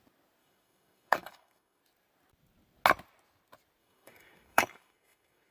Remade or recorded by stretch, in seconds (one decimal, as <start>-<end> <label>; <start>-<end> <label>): 0.0-0.4 recorded; 0.4-1.8 remade; 1.8-3.8 recorded; 3.8-5.5 remade